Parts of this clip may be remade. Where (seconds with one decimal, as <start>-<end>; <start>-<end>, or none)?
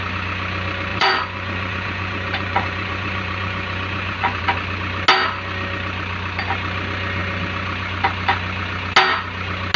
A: 0.9-4.4